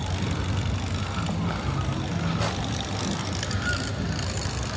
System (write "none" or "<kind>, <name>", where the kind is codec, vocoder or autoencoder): none